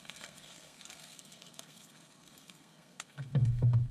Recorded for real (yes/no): no